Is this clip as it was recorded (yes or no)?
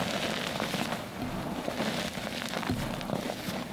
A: yes